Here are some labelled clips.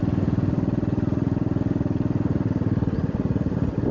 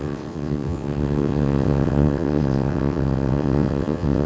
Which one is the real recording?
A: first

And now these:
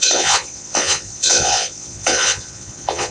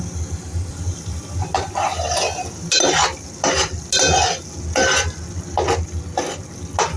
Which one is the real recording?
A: second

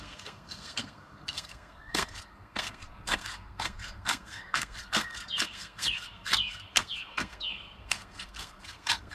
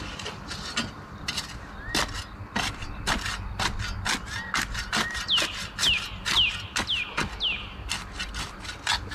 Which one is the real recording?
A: second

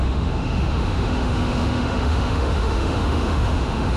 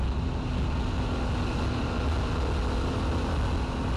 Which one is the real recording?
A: second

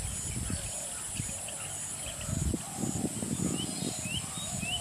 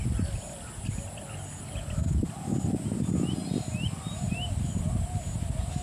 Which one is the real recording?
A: second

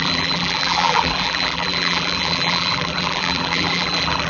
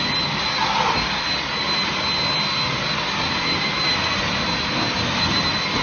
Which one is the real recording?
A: second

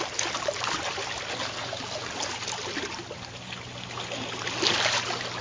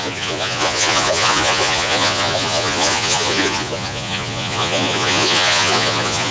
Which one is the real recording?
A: first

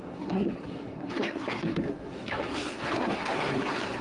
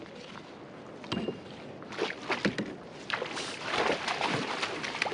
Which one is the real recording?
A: second